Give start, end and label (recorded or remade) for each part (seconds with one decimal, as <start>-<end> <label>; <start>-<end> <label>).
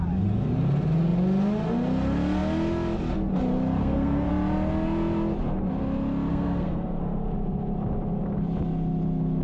0.0-3.8 recorded; 3.8-4.3 remade; 4.3-6.3 recorded; 6.3-7.0 remade; 7.0-9.4 recorded